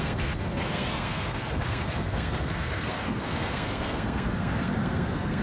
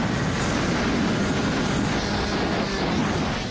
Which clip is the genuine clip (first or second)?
second